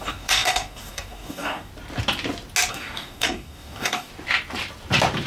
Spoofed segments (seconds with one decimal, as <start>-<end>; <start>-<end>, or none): 0.0-1.7; 2.7-4.1